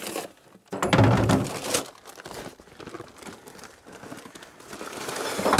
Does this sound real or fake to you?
real